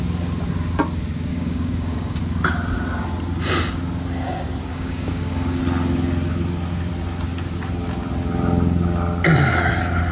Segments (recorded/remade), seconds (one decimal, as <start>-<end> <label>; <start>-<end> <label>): 0.0-1.3 recorded; 1.3-2.2 remade; 2.2-4.7 recorded; 4.7-5.6 remade; 5.6-10.1 recorded